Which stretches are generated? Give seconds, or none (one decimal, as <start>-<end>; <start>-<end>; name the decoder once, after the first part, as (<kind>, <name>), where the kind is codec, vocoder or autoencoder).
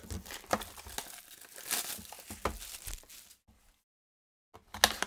none